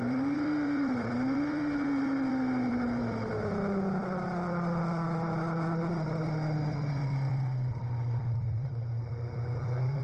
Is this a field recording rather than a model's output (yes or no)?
no